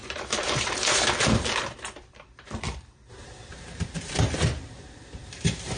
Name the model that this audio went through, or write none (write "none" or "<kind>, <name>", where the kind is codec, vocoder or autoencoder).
vocoder, BigVGAN v2